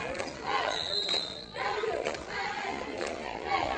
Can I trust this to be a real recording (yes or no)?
no